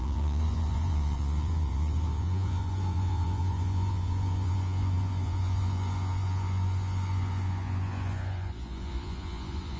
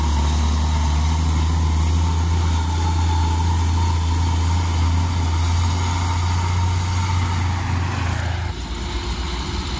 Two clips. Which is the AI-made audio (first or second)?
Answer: first